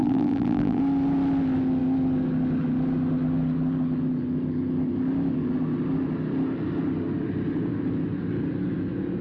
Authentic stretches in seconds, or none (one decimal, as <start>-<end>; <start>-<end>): 0.8-9.2